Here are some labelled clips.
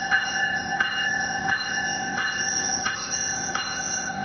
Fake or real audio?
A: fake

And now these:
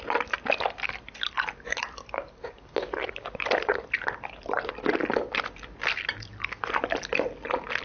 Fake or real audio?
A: real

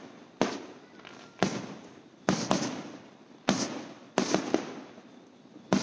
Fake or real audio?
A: real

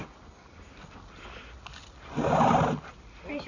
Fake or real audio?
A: real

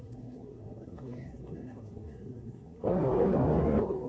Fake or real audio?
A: fake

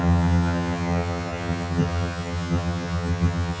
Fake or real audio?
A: fake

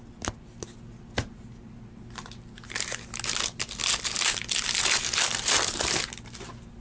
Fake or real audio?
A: real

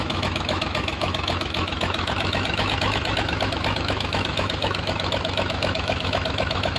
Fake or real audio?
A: fake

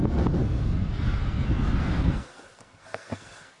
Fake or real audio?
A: fake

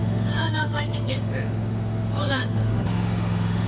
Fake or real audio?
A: fake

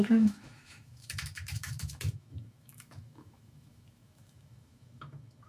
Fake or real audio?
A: fake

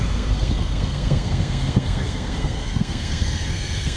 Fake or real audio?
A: fake